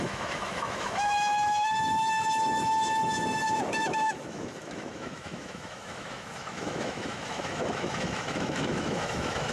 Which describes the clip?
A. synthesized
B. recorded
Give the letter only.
A